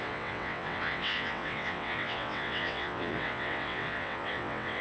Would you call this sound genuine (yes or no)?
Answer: no